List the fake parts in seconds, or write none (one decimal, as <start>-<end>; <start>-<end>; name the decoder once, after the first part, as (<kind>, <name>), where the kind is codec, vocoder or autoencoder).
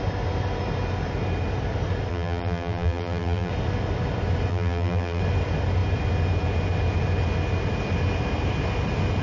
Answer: 2.1-3.5 (vocoder, BigVGAN v2); 4.5-5.2